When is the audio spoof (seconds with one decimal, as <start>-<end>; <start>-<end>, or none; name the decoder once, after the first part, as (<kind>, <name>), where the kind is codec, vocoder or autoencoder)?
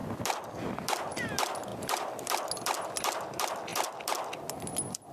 0.0-0.6 (vocoder, BigVGAN v2); 1.7-2.4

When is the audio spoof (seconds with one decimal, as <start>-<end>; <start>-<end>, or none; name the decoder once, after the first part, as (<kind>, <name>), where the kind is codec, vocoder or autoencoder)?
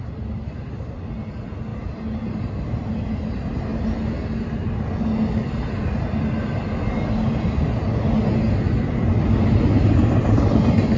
none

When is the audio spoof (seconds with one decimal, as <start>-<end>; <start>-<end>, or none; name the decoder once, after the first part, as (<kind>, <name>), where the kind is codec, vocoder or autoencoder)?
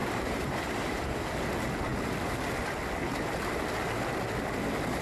0.0-1.4 (vocoder, BigVGAN v2)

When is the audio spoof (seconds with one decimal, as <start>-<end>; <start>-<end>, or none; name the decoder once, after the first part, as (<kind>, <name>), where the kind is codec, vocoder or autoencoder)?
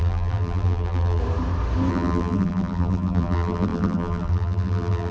0.0-1.2 (vocoder, BigVGAN v2); 1.9-5.1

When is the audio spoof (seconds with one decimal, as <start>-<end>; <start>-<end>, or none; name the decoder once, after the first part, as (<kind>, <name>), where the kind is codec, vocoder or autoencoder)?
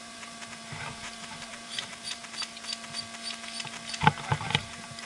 0.0-2.2 (vocoder, BigVGAN v2); 4.4-5.1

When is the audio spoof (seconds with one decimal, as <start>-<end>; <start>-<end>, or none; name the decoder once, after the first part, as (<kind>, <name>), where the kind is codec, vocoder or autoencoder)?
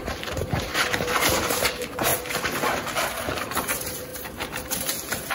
0.0-2.1 (vocoder, BigVGAN v2); 3.2-5.3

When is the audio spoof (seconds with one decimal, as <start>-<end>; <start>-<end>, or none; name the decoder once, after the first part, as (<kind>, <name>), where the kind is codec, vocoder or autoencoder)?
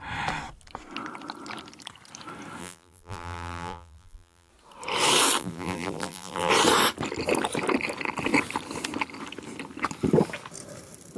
2.6-4.5 (vocoder, BigVGAN v2); 5.4-6.5